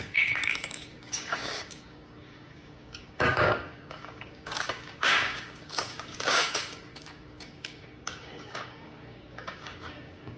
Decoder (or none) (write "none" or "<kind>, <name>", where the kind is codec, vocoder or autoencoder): codec, DAC